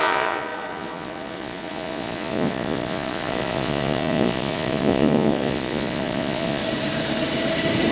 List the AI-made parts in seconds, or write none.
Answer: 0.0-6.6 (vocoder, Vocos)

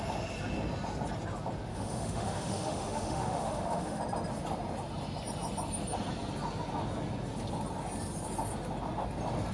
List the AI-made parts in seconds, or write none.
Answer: 1.7-4.0 (autoencoder, DAC-VAE)

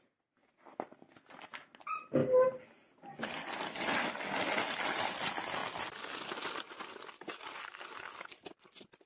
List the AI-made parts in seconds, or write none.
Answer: none

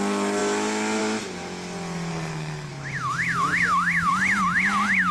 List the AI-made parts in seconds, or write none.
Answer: 2.1-2.7 (codec, SNAC)

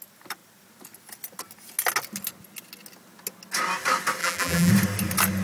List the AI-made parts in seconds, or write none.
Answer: 4.2-4.7 (vocoder, BigVGAN v2)